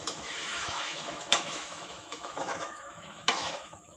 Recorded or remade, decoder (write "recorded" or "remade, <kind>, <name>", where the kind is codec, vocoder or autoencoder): remade, autoencoder, DAC-VAE